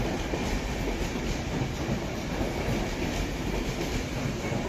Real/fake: real